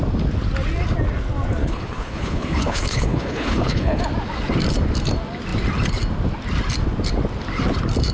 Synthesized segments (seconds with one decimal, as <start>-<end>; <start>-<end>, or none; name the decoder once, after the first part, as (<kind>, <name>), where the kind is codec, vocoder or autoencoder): 1.6-4.0 (codec, HILCodec)